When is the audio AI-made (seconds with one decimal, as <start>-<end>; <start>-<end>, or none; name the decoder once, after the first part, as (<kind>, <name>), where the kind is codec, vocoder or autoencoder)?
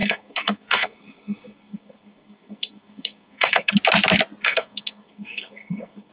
0.0-3.7 (codec, SNAC); 4.4-6.1